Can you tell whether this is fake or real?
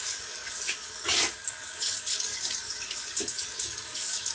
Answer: fake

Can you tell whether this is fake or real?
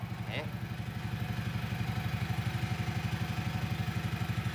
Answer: real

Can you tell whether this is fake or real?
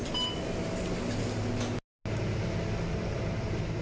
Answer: real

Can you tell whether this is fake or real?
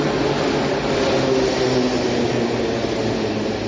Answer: real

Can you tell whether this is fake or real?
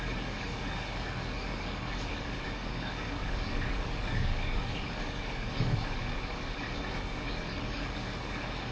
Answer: fake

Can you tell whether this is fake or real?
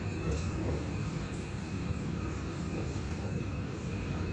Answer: fake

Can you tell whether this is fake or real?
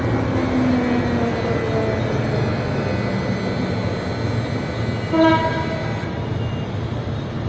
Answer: real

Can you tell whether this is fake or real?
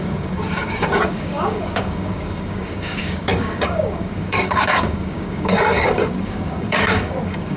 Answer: fake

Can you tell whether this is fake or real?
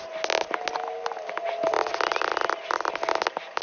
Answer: real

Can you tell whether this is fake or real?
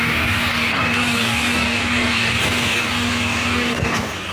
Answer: fake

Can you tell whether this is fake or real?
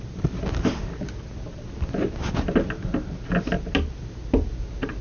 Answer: real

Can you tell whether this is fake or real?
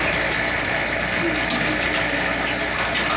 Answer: real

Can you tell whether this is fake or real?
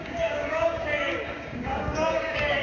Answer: fake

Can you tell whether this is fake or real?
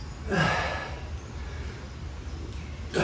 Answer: real